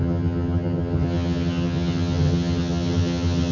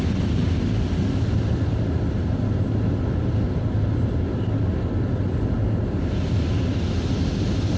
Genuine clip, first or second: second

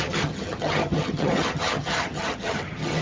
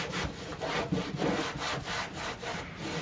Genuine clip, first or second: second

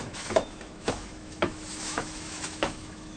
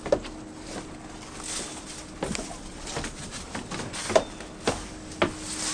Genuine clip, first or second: second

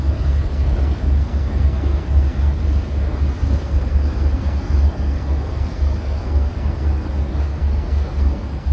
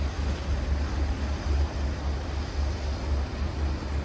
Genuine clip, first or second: second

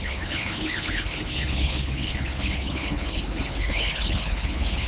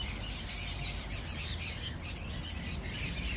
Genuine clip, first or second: second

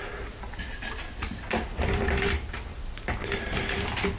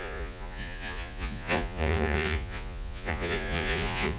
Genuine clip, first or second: first